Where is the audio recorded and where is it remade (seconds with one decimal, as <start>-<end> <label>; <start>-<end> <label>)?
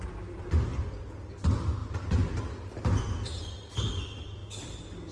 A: 0.0-5.1 recorded